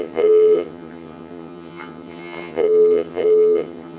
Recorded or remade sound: remade